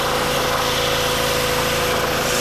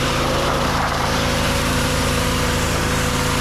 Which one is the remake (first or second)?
second